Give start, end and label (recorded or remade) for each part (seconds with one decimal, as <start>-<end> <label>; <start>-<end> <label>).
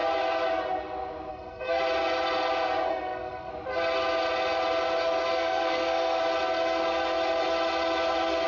0.0-1.3 recorded; 1.3-1.8 remade; 1.8-2.8 recorded; 2.8-3.5 remade; 3.5-5.3 recorded; 5.3-6.2 remade; 6.2-8.5 recorded